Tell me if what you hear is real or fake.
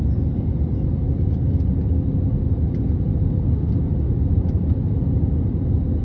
real